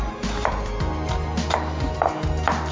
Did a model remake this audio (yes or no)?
no